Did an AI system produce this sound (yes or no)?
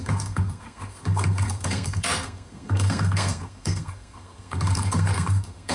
yes